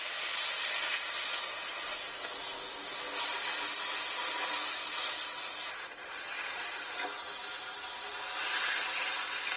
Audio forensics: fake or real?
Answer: real